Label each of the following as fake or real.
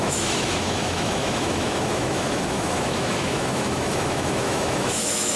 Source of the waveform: fake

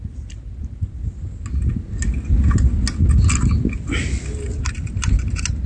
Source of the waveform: real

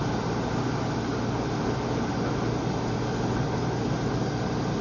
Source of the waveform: real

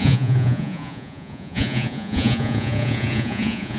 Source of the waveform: fake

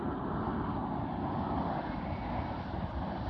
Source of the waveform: real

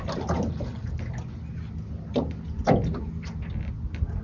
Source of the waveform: real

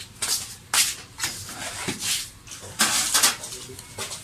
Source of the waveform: real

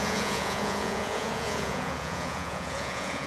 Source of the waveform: fake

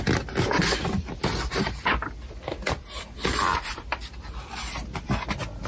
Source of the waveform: real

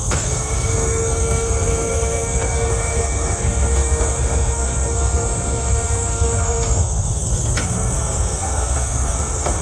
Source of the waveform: fake